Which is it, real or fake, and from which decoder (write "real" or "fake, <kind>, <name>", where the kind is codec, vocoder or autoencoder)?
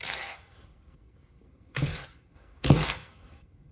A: fake, codec, SNAC